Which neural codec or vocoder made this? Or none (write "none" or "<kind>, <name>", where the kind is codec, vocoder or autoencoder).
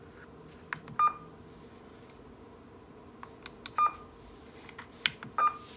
none